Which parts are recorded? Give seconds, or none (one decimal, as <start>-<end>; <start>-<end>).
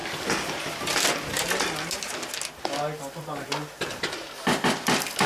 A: 0.0-5.3